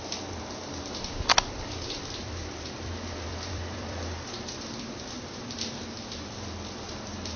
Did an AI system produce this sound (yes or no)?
yes